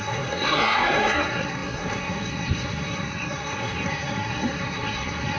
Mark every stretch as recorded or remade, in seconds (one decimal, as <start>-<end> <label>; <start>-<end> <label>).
0.0-5.4 remade